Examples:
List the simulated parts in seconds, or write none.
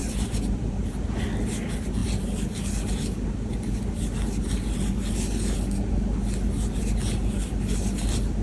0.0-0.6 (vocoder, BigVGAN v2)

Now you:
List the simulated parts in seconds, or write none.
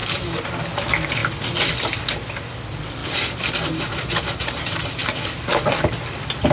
none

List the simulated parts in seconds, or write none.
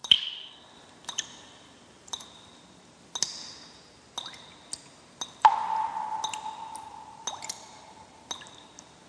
0.0-3.1 (vocoder, BigVGAN v2)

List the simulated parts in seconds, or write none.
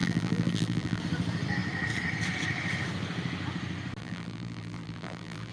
0.0-1.0 (vocoder, BigVGAN v2); 4.0-5.5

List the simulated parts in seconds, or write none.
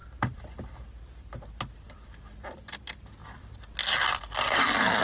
0.0-2.7 (vocoder, BigVGAN v2); 3.2-4.6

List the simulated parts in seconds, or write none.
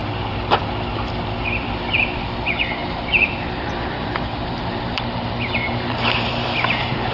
2.8-7.1 (vocoder, BigVGAN v2)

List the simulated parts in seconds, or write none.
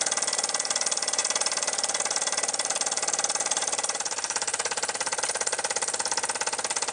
1.2-5.2 (vocoder, BigVGAN v2)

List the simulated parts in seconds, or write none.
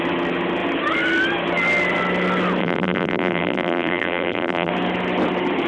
2.6-4.7 (vocoder, BigVGAN v2)